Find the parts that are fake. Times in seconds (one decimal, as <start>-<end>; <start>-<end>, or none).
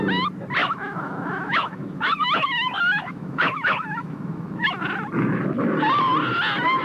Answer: 0.6-4.7